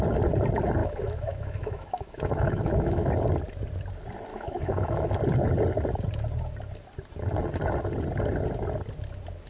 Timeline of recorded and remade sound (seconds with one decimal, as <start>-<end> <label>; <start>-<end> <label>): 0.0-0.8 recorded; 0.8-3.1 remade; 3.1-4.3 recorded; 4.3-5.1 remade; 5.1-9.5 recorded